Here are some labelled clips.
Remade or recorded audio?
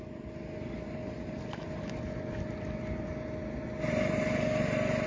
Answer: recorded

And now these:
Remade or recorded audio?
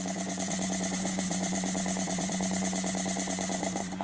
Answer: remade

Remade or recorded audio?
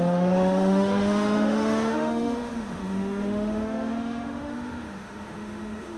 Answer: remade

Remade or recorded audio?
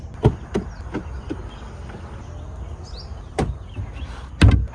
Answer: recorded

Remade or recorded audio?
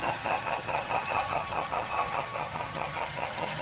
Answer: remade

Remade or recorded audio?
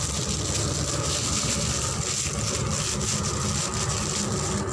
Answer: recorded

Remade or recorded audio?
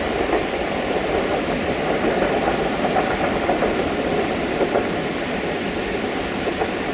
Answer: recorded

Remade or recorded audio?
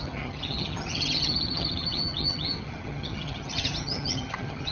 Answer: remade